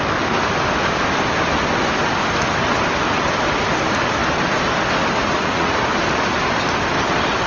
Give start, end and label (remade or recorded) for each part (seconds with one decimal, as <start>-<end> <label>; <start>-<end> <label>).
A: 0.0-5.2 recorded; 5.2-5.8 remade; 5.8-7.5 recorded